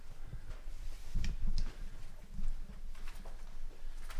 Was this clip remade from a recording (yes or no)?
no